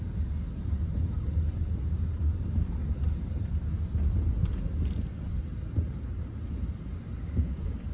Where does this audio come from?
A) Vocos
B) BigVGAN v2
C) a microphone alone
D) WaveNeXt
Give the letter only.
C